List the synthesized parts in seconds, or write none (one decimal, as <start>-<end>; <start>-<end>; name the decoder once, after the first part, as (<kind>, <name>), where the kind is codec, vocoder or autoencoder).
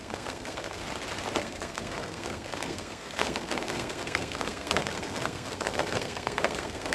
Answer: 0.0-0.8 (codec, SNAC); 1.4-6.9